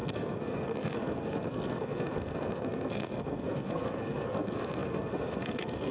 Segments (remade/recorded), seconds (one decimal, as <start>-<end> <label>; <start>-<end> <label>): 0.0-5.9 remade